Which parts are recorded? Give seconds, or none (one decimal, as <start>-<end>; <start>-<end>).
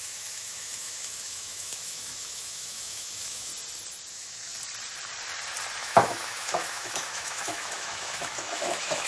3.5-4.1; 4.5-5.8